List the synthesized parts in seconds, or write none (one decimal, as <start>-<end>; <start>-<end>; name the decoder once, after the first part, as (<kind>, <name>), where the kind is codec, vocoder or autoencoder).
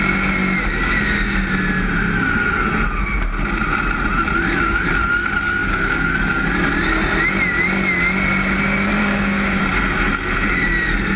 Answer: 5.6-6.5 (codec, DAC); 9.0-9.6